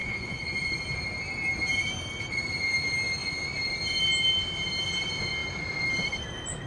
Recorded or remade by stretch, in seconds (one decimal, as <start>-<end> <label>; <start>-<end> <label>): 0.0-0.8 remade; 0.8-6.7 recorded